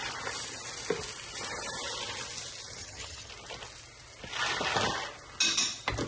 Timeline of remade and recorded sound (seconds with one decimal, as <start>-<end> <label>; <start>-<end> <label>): 0.0-2.8 recorded; 2.8-3.3 remade; 3.3-6.1 recorded